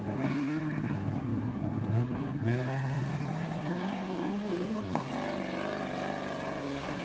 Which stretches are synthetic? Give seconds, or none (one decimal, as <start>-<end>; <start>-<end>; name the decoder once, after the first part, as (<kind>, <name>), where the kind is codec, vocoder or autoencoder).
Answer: 0.0-5.1 (codec, SNAC); 6.6-7.0